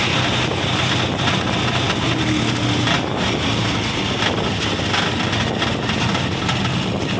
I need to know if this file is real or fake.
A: real